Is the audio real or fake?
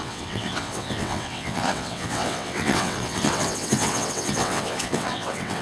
fake